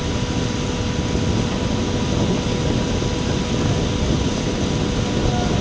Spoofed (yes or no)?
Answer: no